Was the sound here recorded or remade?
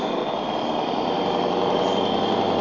recorded